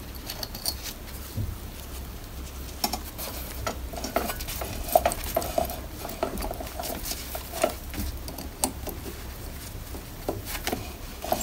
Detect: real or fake real